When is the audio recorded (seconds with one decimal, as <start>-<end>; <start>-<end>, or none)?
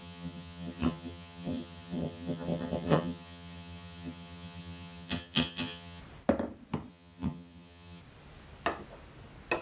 6.0-6.9; 8.0-9.6